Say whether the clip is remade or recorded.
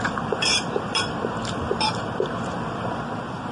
remade